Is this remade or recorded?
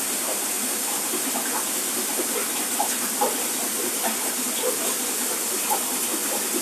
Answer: recorded